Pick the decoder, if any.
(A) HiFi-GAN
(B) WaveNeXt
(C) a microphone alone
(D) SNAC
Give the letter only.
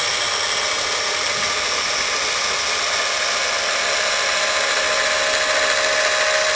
C